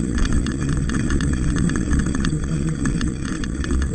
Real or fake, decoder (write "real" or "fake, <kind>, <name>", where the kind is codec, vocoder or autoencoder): fake, vocoder, WaveNeXt